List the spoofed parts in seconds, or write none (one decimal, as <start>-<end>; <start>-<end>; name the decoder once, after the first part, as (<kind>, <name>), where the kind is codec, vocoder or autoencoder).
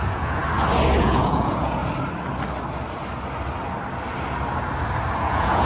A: 0.0-0.4 (vocoder, Vocos); 1.0-1.8; 5.2-5.7